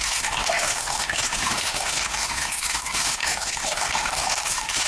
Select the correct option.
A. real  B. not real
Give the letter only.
B